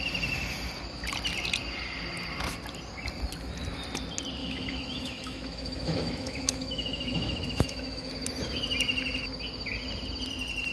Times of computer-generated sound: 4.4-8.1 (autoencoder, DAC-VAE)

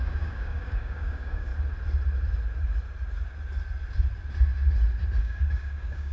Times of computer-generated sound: 0.0-1.5 (codec, DAC); 5.2-6.1

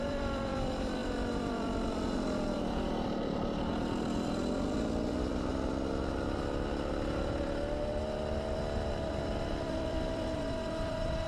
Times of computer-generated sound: 0.0-5.5 (vocoder, BigVGAN v2); 8.9-11.3

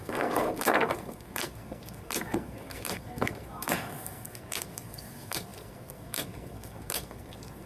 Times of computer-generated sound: 0.0-7.7 (codec, SNAC)

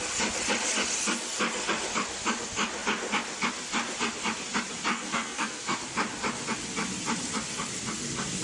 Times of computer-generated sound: 4.9-5.8 (codec, SNAC)

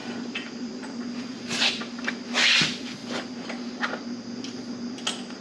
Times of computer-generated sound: 0.0-0.7 (vocoder, BigVGAN v2); 1.3-2.1

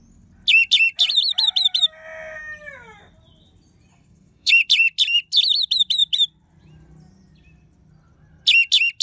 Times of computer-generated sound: 3.9-4.5 (codec, SNAC)